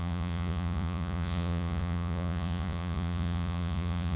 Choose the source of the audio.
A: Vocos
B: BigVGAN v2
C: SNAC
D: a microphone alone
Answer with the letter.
A